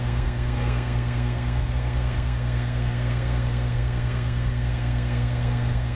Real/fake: fake